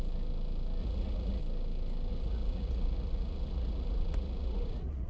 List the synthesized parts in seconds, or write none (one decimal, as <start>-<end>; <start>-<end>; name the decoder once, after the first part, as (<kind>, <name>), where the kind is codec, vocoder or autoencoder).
0.8-1.4 (vocoder, Vocos); 2.1-5.1